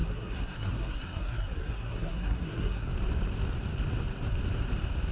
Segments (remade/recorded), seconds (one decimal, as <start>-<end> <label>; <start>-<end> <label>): 0.0-2.9 remade; 2.9-5.1 recorded

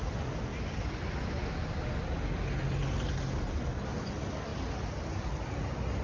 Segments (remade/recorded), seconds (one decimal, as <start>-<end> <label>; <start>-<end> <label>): 0.0-6.0 recorded

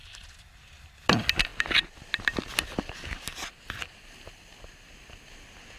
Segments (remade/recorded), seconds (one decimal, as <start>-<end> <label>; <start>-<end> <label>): 0.0-0.8 remade; 0.8-5.8 recorded

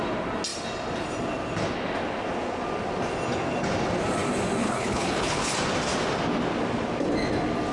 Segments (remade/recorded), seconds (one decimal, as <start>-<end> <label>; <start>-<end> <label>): 0.0-4.6 recorded; 4.6-5.5 remade; 5.5-7.7 recorded

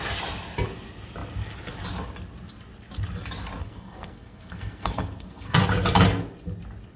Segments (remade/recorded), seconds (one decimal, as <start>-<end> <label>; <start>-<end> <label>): 0.0-3.6 recorded; 3.6-5.6 remade; 5.6-7.0 recorded